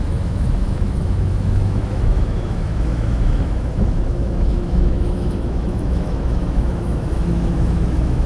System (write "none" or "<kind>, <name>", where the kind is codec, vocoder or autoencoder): autoencoder, DAC-VAE